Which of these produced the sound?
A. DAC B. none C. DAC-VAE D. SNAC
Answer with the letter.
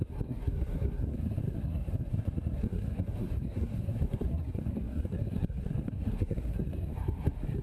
D